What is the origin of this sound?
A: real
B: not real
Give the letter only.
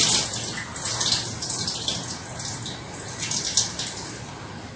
A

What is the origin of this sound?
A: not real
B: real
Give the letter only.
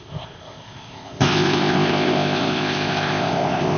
A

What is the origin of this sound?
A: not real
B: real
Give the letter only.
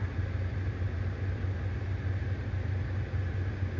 B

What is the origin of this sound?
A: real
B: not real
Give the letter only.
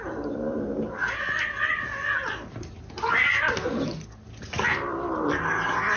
A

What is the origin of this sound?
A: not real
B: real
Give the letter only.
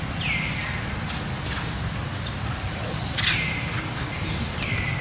B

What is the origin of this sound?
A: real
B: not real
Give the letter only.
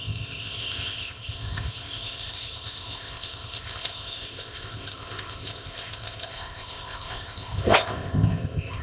B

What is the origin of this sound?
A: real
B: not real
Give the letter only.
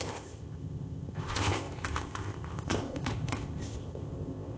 B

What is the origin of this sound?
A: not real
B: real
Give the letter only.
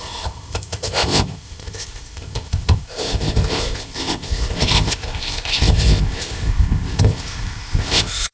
A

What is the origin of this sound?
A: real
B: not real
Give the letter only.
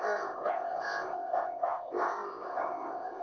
B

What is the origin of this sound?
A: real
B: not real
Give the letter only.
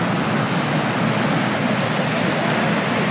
A